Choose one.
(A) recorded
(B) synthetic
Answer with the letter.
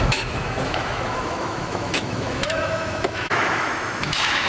B